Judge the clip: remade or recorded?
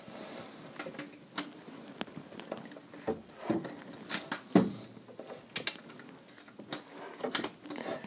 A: recorded